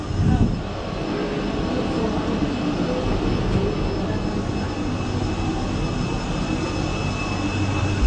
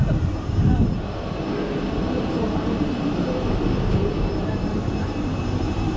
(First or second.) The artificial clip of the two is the second